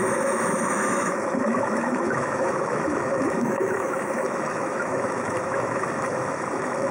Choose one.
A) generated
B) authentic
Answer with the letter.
A